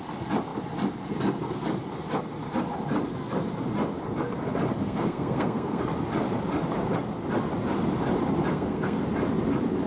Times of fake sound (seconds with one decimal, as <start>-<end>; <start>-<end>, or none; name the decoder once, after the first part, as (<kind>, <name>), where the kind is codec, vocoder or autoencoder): 4.8-5.8 (codec, SNAC); 8.5-9.0